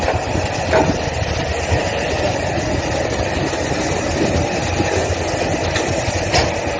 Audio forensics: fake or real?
real